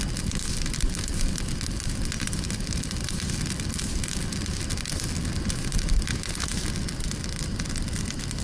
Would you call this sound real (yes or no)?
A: yes